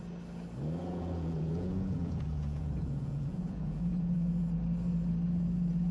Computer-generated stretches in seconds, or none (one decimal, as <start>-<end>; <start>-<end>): 0.9-4.4